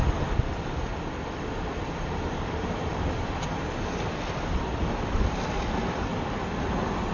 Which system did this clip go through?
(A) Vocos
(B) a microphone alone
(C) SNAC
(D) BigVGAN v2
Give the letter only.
D